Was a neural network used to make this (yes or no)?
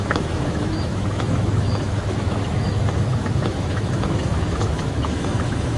yes